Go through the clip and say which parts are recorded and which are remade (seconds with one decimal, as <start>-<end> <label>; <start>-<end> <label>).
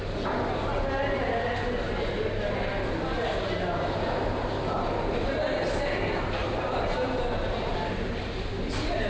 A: 0.0-6.4 recorded; 6.4-8.5 remade; 8.5-9.1 recorded